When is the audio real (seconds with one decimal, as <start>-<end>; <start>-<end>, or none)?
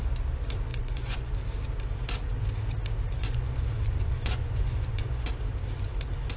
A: 0.0-0.7; 1.3-3.2; 5.3-6.4